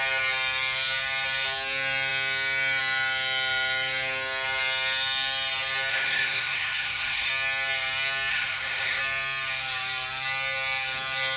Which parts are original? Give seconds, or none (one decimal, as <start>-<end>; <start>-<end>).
0.0-5.9; 7.3-8.3; 9.0-11.4